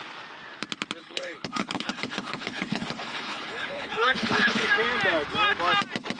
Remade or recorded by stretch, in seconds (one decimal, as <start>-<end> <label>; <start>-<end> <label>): 0.0-1.0 recorded; 1.0-4.7 remade; 4.7-6.2 recorded